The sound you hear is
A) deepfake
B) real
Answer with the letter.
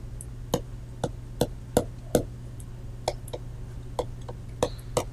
B